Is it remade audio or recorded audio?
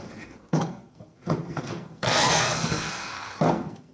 remade